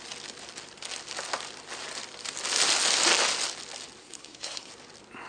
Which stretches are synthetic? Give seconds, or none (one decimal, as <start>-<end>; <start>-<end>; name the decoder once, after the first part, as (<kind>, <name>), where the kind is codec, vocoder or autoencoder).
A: 4.0-4.7 (codec, SNAC)